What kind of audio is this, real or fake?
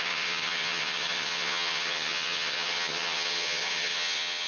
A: fake